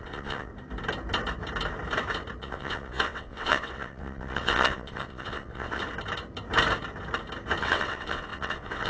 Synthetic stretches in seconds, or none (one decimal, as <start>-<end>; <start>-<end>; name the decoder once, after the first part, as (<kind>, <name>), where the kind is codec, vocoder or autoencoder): 0.0-0.5 (vocoder, WaveNeXt); 2.4-5.8; 7.6-8.9